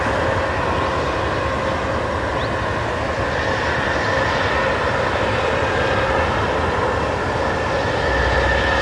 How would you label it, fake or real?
real